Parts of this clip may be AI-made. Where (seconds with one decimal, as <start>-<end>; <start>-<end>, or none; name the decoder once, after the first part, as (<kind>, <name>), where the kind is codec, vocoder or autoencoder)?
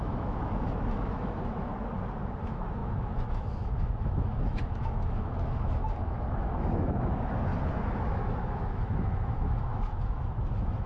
0.0-1.7 (autoencoder, DAC-VAE); 2.4-7.5; 8.0-10.9